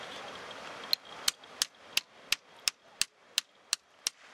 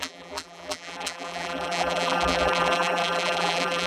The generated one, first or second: second